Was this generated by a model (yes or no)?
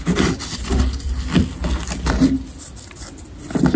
no